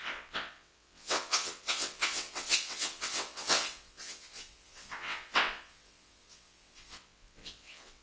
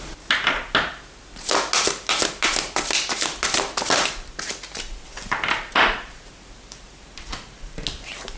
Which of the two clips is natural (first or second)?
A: second